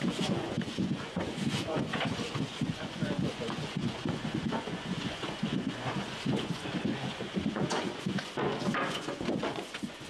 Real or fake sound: fake